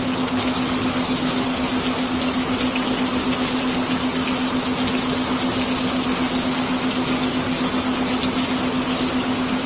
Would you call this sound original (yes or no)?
yes